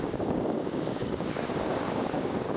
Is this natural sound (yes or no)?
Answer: no